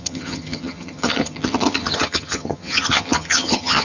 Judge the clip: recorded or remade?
remade